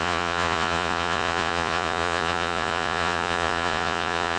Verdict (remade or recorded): remade